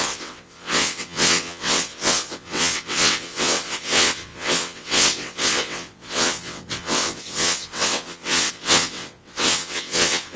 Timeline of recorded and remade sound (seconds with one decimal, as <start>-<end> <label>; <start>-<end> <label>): 0.0-10.4 remade